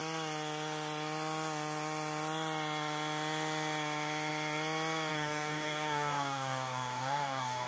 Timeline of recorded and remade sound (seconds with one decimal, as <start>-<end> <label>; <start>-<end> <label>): 0.0-5.1 recorded; 5.1-7.7 remade